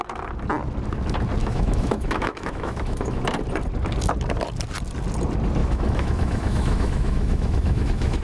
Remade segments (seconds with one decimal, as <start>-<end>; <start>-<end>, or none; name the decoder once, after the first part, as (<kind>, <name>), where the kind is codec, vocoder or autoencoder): 1.4-3.2 (autoencoder, DAC-VAE); 5.6-8.2